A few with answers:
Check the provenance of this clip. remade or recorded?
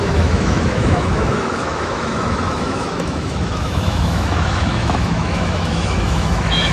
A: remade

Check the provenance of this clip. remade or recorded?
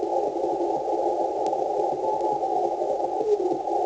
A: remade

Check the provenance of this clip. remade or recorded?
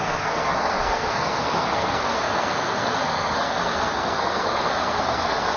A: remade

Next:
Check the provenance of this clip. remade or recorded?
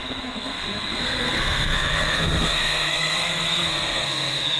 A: remade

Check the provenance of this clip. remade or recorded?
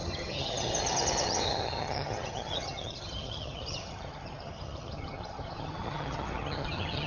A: remade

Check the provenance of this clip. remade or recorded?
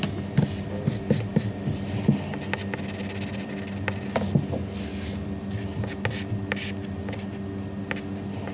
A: recorded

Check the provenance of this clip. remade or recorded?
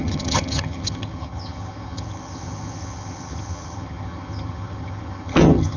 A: remade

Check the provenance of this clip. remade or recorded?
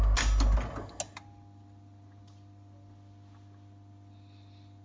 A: recorded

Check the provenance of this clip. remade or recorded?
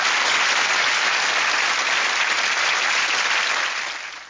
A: recorded